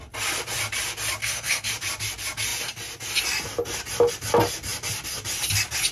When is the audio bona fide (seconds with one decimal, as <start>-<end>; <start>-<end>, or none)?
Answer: 0.0-1.2; 1.7-5.9